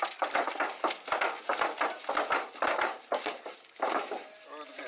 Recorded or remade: remade